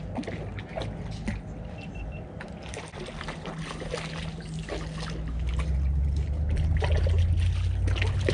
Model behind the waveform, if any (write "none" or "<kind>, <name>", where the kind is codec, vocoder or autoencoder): none